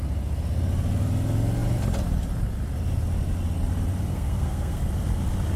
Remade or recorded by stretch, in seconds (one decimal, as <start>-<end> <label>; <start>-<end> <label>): 0.0-4.1 recorded; 4.1-4.8 remade; 4.8-5.6 recorded